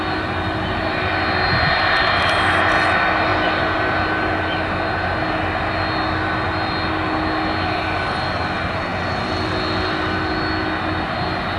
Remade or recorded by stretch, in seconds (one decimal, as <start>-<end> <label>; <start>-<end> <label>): 0.0-11.6 recorded